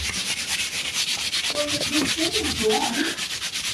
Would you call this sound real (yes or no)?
no